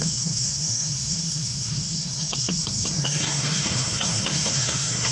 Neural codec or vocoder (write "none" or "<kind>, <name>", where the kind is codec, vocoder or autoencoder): codec, SNAC